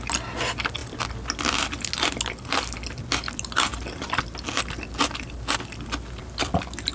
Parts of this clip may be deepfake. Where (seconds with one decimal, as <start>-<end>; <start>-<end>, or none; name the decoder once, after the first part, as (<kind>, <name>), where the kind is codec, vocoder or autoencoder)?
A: none